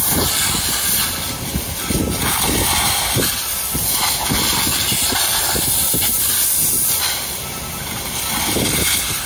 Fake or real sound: real